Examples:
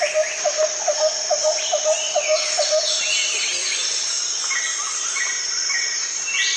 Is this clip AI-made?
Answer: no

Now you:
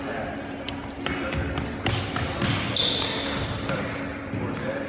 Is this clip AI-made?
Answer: no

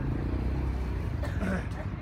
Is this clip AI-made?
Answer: no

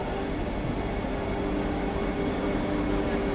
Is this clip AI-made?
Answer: no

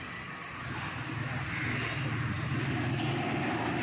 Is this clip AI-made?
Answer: no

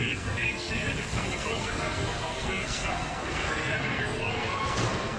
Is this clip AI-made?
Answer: yes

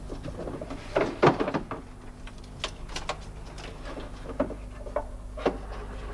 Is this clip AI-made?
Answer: no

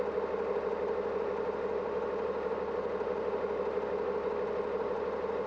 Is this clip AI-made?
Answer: no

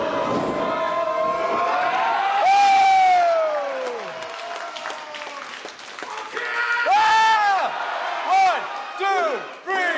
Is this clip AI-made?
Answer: no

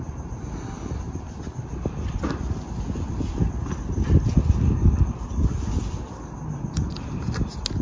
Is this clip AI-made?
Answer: no